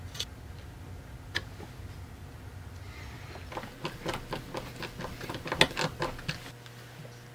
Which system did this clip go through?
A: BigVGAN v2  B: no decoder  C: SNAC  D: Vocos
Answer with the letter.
B